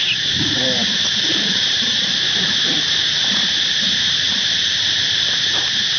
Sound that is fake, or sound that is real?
fake